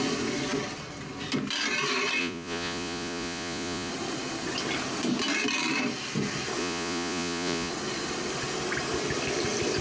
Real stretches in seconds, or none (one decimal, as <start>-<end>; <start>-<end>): 0.0-2.2; 3.9-6.6; 7.7-9.8